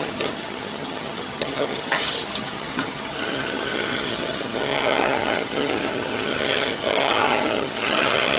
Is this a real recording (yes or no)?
no